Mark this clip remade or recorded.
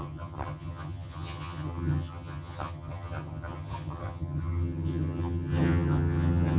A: remade